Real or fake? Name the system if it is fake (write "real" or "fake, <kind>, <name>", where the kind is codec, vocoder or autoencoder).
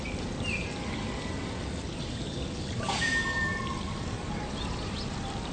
real